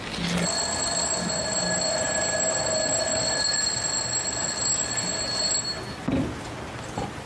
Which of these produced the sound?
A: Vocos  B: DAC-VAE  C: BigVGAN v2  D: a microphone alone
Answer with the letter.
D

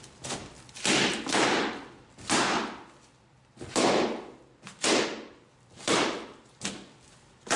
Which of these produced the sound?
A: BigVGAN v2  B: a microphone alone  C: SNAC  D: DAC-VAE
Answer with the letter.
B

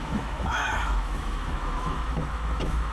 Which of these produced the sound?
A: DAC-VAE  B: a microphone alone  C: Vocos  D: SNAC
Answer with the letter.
A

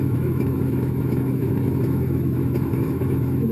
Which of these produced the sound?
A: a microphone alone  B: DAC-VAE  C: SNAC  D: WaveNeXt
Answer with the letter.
B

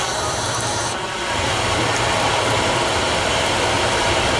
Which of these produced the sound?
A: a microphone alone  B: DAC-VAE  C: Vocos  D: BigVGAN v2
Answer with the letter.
A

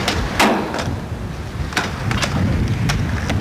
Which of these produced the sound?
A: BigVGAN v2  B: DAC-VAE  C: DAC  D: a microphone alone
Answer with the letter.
D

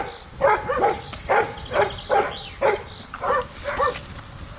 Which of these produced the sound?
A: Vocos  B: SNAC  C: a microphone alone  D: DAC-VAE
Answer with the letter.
C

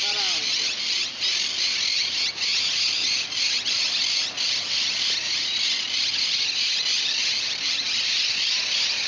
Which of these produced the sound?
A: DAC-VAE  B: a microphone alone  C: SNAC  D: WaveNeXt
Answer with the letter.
B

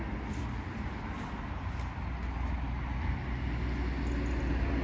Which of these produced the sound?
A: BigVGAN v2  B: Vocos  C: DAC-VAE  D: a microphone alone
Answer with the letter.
D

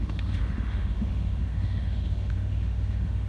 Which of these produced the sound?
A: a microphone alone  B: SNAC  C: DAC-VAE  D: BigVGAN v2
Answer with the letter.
C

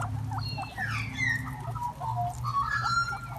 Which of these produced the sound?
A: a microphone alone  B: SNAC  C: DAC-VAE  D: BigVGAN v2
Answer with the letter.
A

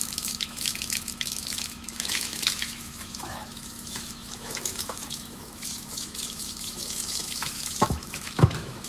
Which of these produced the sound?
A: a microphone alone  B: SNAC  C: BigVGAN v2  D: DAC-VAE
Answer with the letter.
D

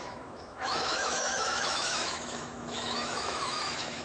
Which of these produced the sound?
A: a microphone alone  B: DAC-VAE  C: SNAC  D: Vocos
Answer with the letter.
B